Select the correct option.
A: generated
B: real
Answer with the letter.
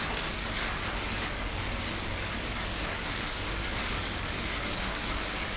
A